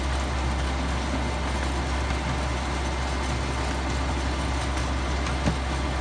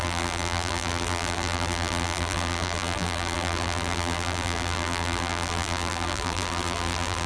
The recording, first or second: first